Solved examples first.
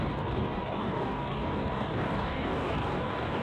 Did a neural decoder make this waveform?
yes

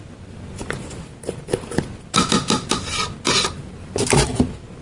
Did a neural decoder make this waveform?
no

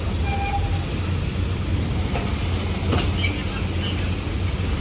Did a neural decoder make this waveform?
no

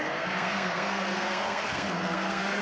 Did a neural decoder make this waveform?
yes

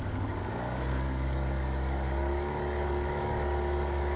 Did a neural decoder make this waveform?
yes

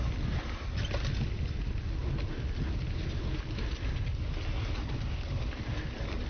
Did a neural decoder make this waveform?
no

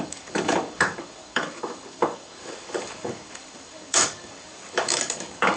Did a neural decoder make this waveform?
yes